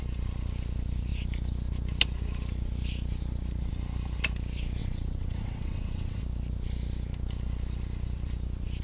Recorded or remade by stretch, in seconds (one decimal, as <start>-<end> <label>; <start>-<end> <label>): 0.0-4.8 recorded; 4.8-6.2 remade; 6.2-8.8 recorded